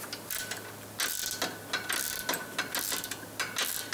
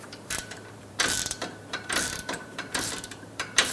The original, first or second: first